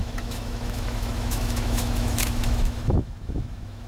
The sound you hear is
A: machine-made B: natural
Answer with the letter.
A